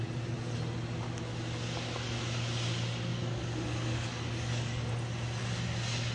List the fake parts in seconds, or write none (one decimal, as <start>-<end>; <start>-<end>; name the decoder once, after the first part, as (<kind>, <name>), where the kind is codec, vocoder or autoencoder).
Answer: 3.1-4.9 (codec, DAC)